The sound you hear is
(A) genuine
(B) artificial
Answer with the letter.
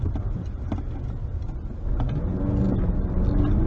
A